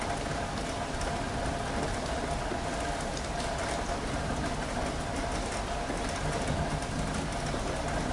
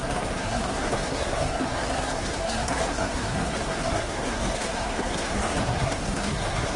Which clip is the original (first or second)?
first